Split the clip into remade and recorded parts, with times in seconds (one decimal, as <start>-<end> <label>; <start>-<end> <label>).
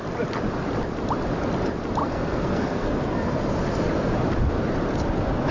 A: 0.0-2.0 recorded; 2.0-3.0 remade; 3.0-5.5 recorded